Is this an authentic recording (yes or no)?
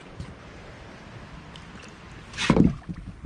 yes